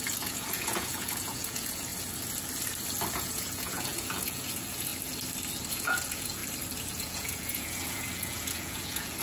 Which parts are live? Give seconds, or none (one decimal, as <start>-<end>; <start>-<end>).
1.9-3.1; 4.9-5.7; 6.4-6.9